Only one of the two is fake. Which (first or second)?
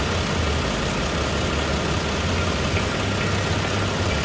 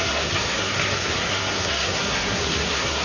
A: second